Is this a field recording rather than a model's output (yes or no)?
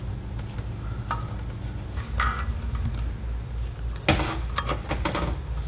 yes